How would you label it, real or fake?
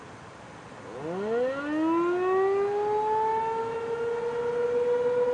real